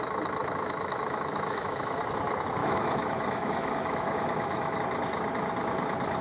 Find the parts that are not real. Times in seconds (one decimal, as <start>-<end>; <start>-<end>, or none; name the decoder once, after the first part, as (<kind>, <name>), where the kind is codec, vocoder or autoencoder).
0.4-2.0 (autoencoder, DAC-VAE); 2.6-4.8